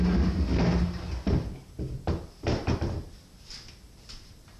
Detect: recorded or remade recorded